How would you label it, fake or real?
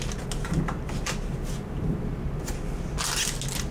real